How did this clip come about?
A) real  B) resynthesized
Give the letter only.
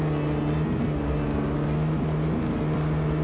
A